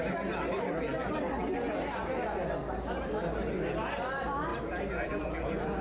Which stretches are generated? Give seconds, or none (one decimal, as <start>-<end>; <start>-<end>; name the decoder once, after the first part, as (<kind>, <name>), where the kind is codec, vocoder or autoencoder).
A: none